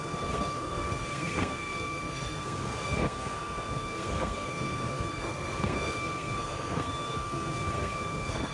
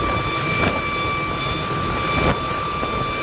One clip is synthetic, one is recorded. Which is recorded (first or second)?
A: second